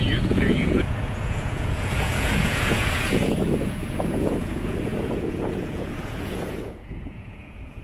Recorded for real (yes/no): no